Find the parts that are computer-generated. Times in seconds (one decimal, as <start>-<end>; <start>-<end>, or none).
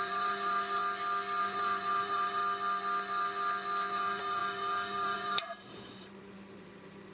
0.0-0.8; 1.4-2.4; 3.9-7.1